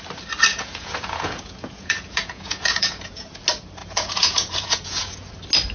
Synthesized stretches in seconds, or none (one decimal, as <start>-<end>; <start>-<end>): 0.5-3.4; 3.8-5.3